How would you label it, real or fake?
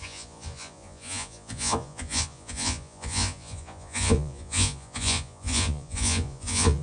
fake